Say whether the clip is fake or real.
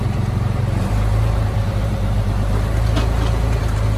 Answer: fake